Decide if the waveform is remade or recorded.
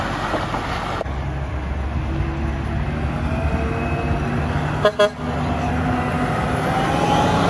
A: recorded